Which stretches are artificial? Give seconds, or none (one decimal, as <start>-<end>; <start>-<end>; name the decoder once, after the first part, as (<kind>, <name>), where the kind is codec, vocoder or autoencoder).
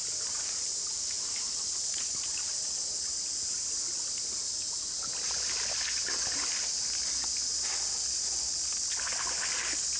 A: 0.0-2.7 (vocoder, BigVGAN v2)